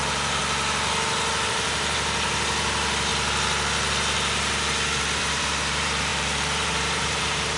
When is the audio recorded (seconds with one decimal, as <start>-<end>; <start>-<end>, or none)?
0.4-1.5; 3.1-5.2